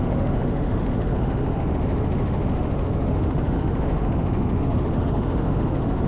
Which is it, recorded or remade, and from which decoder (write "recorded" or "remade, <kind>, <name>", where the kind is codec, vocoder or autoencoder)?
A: remade, autoencoder, DAC-VAE